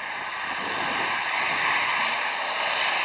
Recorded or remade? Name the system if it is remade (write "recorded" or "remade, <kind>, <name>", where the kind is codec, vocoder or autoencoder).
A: recorded